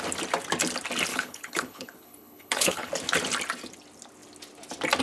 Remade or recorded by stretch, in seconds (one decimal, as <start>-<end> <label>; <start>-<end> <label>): 0.0-1.1 recorded; 1.1-2.9 remade; 2.9-5.0 recorded